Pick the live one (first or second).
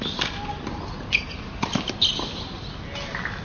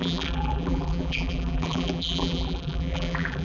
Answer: first